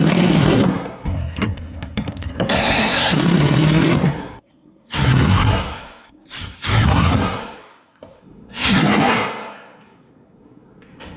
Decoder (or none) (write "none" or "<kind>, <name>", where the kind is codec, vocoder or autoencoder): codec, SNAC